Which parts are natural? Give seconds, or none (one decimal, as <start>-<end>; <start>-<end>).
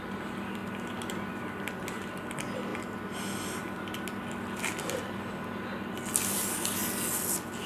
0.0-7.7